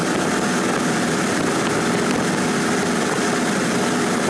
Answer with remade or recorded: recorded